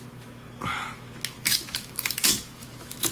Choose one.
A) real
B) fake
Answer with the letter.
B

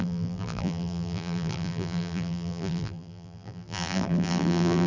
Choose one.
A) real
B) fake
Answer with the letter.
B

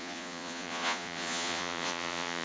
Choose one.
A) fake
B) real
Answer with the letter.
A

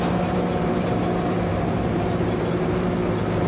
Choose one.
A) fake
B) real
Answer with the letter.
A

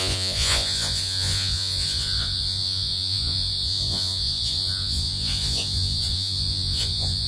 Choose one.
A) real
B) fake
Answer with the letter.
B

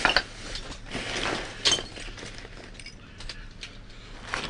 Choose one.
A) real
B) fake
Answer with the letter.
A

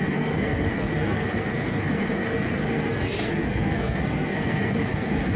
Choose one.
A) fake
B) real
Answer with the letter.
A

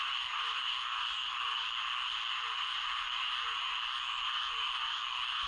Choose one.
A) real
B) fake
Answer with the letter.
A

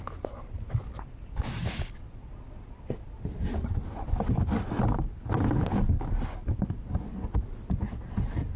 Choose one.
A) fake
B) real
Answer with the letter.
B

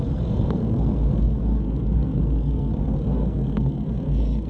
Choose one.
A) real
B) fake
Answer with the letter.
B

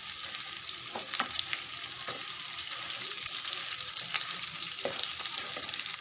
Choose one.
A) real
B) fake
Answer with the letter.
A